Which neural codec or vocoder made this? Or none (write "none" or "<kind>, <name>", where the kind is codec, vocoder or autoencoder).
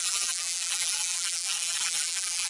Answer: vocoder, BigVGAN v2